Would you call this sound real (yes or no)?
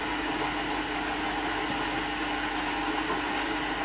yes